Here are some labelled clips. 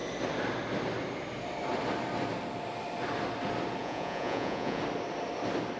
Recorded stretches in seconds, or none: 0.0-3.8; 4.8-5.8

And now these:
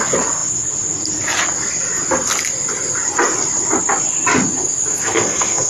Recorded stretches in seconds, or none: 0.0-4.9